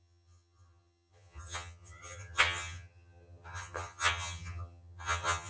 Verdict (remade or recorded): remade